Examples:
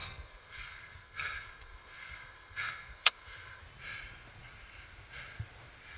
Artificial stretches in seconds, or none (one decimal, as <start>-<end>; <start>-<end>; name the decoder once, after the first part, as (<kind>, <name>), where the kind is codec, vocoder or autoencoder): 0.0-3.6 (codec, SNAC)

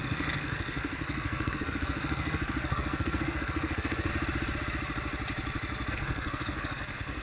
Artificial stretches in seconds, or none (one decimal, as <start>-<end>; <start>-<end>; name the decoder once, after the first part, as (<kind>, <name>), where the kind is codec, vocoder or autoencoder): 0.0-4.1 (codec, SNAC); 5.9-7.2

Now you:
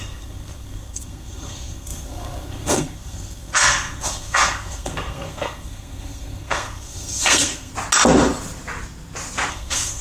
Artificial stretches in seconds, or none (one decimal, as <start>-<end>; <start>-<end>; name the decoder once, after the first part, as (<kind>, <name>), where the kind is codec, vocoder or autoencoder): 0.0-7.7 (codec, SNAC); 9.5-10.0

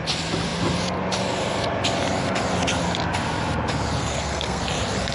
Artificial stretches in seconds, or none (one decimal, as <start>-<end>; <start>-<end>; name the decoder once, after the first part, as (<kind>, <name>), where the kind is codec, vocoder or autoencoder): 4.0-4.6 (codec, SNAC)

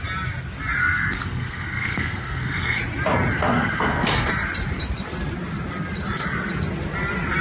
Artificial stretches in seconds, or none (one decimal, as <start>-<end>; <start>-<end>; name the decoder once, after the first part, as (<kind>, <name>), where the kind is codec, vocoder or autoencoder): 0.8-2.8 (codec, SNAC); 3.4-4.3

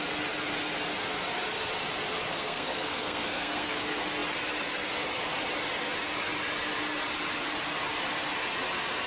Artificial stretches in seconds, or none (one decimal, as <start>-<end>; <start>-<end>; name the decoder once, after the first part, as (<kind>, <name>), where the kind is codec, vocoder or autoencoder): 2.3-3.8 (codec, SNAC)

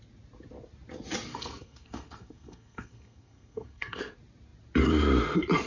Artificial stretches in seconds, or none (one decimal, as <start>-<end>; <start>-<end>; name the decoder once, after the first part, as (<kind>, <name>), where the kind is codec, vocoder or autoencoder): 1.3-4.0 (codec, SNAC)